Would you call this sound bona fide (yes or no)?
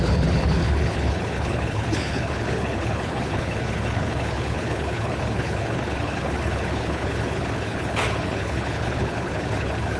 no